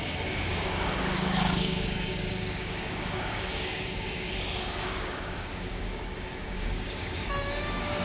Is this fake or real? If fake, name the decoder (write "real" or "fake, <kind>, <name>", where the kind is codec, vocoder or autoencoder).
fake, codec, DAC